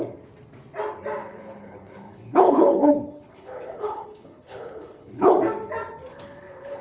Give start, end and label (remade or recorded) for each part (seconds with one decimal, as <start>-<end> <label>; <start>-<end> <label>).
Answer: 0.0-1.2 recorded; 1.2-5.3 remade; 5.3-6.1 recorded; 6.1-6.8 remade